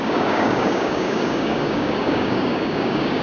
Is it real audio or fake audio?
fake